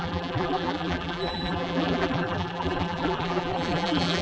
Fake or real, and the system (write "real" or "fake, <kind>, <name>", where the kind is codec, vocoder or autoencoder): fake, vocoder, BigVGAN v2